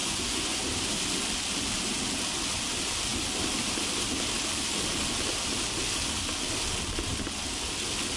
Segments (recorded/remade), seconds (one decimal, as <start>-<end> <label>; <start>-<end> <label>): 0.0-0.6 remade; 0.6-8.2 recorded